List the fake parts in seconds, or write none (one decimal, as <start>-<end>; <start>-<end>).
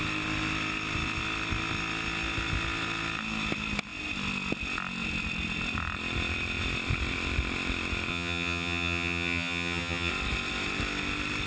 8.1-10.1